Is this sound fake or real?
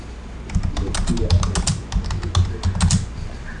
real